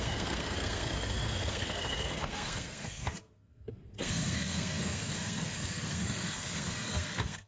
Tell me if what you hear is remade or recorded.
remade